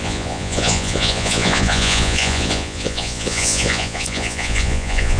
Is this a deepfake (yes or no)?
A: yes